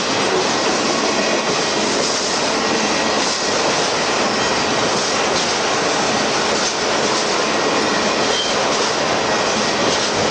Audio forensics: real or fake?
real